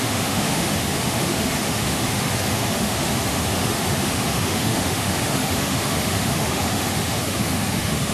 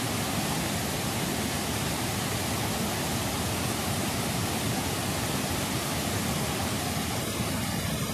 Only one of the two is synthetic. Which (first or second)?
first